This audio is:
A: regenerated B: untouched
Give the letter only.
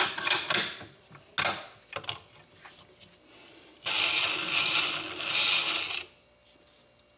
B